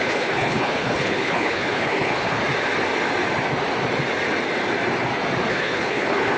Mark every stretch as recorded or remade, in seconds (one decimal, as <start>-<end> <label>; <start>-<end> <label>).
0.0-2.4 remade; 2.4-5.5 recorded; 5.5-6.4 remade